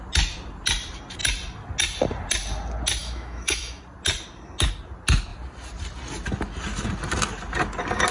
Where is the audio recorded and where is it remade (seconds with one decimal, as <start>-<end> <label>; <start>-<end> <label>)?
0.0-3.0 recorded; 3.0-3.8 remade; 3.8-8.1 recorded